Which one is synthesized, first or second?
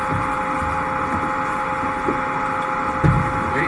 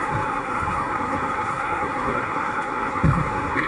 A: second